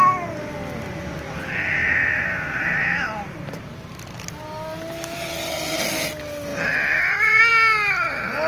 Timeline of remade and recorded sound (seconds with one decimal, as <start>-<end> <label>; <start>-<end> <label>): 0.0-1.8 recorded; 1.8-4.3 remade; 4.3-8.5 recorded